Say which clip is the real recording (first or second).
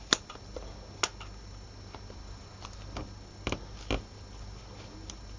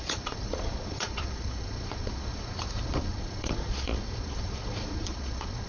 first